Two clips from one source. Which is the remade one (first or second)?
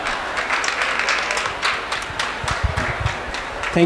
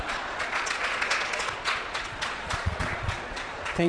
second